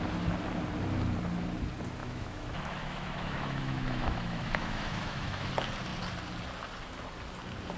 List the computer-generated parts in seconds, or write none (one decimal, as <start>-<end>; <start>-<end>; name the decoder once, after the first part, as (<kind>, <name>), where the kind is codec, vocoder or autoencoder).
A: 2.0-5.5 (autoencoder, DAC-VAE)